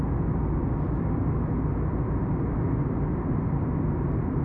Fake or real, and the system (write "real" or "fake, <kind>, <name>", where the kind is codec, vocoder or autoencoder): real